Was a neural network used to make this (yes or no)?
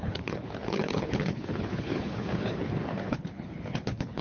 yes